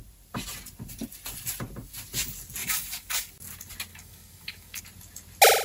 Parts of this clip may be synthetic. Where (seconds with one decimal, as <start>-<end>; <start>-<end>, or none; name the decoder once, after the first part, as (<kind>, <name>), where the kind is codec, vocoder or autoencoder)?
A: 2.6-3.3 (codec, DAC); 3.9-4.8